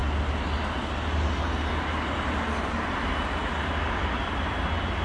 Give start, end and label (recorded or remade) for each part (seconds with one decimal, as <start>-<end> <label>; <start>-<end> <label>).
0.0-3.4 recorded; 3.4-4.5 remade; 4.5-5.0 recorded

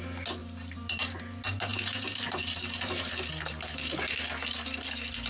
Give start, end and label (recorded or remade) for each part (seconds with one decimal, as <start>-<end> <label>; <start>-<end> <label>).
0.0-0.4 recorded; 0.4-1.1 remade; 1.1-1.7 recorded; 1.7-3.1 remade; 3.1-5.3 recorded

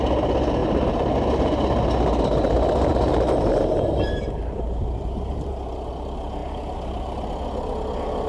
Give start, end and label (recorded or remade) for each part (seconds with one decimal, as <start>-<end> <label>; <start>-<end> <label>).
0.0-0.6 recorded; 0.6-1.1 remade; 1.1-2.9 recorded; 2.9-5.9 remade; 5.9-6.4 recorded; 6.4-7.3 remade; 7.3-8.3 recorded

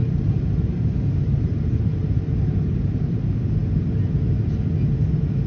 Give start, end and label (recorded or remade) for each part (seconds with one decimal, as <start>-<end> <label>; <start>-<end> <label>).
0.0-3.2 remade; 3.2-5.5 recorded

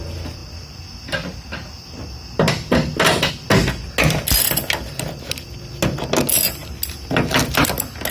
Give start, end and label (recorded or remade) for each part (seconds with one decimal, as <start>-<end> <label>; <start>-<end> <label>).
0.0-8.1 recorded

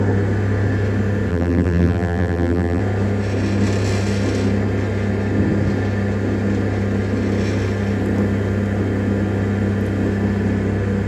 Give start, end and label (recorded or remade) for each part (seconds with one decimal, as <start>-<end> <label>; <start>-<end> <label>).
0.0-1.3 recorded; 1.3-2.8 remade; 2.8-11.1 recorded

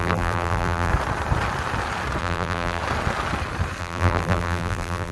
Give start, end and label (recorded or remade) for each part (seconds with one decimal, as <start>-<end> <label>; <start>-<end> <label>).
0.0-0.9 remade; 0.9-2.2 recorded; 2.2-2.8 remade; 2.8-3.8 recorded; 3.8-5.1 remade